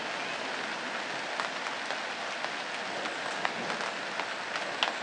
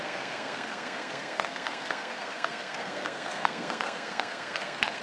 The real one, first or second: first